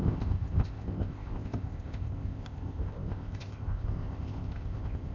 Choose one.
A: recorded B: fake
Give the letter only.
B